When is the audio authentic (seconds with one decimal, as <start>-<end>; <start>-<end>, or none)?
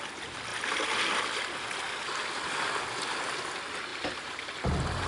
0.0-3.9; 4.6-5.1